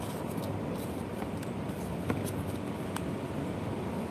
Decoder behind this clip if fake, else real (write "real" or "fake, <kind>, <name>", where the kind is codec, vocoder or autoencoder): real